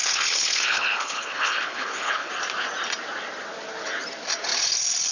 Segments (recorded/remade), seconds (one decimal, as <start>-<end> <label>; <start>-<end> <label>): 0.0-2.3 remade; 2.3-5.1 recorded

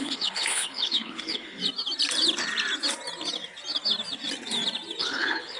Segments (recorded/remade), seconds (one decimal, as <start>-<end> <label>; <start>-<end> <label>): 0.0-1.6 remade; 1.6-5.0 recorded; 5.0-5.6 remade

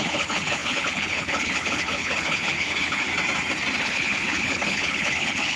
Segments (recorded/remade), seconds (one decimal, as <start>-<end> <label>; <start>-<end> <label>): 0.0-3.1 remade; 3.1-3.8 recorded; 3.8-5.6 remade

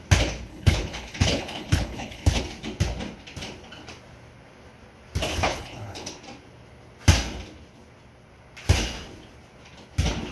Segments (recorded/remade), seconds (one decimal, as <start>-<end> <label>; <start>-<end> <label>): 0.0-0.5 recorded; 0.5-2.4 remade; 2.4-5.3 recorded; 5.3-6.1 remade; 6.1-10.3 recorded

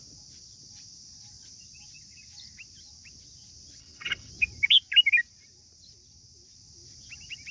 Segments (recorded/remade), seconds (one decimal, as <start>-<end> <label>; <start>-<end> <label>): 0.0-3.8 recorded; 3.8-4.3 remade; 4.3-7.5 recorded

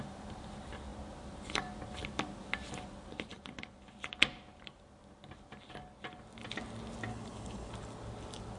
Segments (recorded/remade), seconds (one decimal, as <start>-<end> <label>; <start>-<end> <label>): 0.0-7.1 recorded; 7.1-7.7 remade; 7.7-8.6 recorded

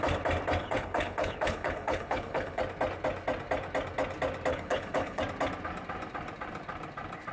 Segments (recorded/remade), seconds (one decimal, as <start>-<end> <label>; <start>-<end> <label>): 0.0-0.6 recorded; 0.6-2.6 remade; 2.6-4.5 recorded; 4.5-5.2 remade; 5.2-7.3 recorded